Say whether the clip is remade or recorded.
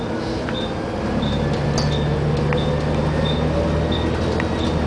recorded